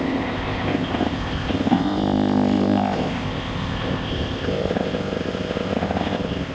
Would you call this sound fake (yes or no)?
yes